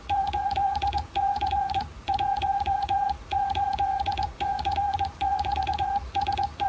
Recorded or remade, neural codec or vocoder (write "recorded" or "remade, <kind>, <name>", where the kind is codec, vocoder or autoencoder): remade, vocoder, Vocos